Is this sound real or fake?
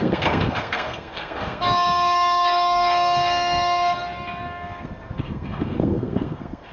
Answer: fake